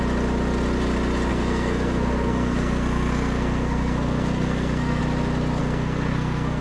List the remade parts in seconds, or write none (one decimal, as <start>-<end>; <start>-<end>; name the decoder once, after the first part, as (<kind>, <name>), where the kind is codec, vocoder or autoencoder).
1.3-5.0 (codec, SNAC); 5.6-6.6